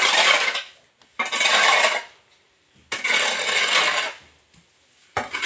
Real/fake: real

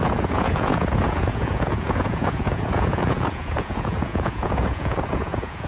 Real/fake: fake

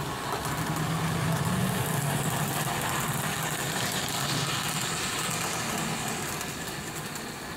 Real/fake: real